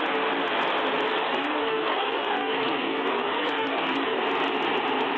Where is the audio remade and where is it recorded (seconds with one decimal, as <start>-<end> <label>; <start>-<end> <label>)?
0.0-1.1 recorded; 1.1-4.2 remade; 4.2-5.2 recorded